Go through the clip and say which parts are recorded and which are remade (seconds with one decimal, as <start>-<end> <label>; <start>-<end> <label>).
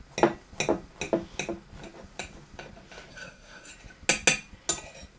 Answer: 0.0-3.1 recorded; 3.1-3.7 remade; 3.7-5.2 recorded